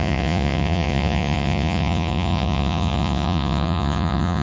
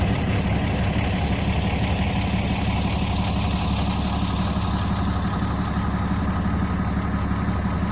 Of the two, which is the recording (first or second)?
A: second